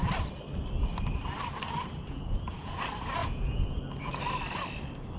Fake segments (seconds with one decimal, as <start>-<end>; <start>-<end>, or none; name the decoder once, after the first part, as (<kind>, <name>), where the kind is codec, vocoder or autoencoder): 2.0-2.8 (vocoder, Vocos); 3.2-3.8